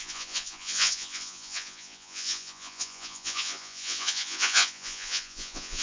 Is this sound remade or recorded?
remade